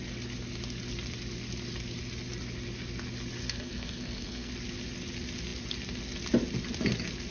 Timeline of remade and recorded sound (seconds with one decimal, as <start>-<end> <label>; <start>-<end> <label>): 0.0-3.4 recorded; 3.4-4.5 remade; 4.5-7.3 recorded